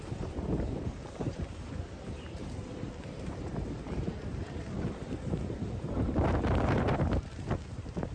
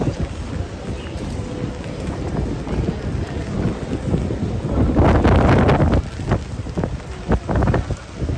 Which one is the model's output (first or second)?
first